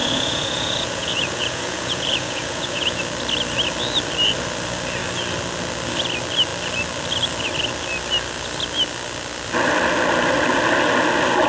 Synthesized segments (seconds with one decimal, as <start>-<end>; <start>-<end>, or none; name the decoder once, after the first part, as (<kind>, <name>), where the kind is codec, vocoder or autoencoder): 0.0-3.0 (vocoder, Vocos)